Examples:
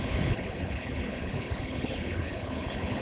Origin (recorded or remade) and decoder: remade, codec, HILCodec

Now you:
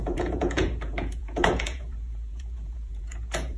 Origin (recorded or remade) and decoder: remade, vocoder, Vocos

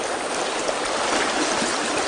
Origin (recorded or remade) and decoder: recorded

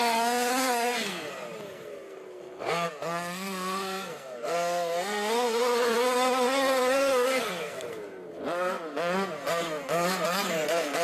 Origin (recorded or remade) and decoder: remade, codec, SNAC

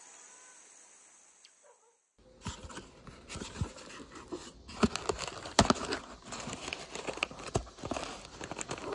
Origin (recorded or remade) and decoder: recorded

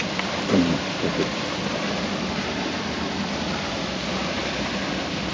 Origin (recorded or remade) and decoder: remade, vocoder, BigVGAN v2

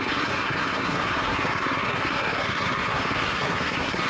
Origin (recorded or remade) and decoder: remade, codec, SNAC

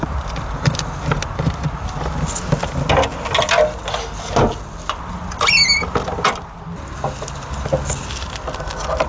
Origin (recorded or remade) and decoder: recorded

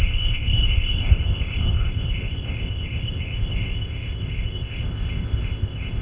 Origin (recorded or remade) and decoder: remade, codec, ZipCodec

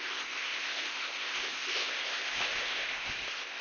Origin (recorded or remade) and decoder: remade, codec, ZipCodec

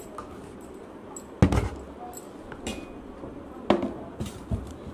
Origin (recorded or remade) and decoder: recorded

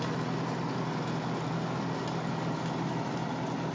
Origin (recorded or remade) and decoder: recorded